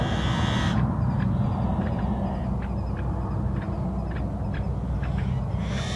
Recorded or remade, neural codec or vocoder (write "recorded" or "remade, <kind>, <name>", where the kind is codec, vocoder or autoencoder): recorded